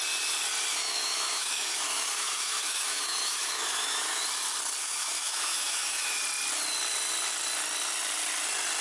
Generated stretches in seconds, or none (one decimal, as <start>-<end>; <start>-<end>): 0.7-4.2; 4.8-6.2